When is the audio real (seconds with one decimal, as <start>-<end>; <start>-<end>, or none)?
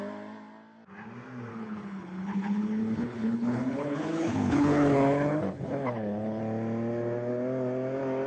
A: 0.0-1.5; 6.4-8.3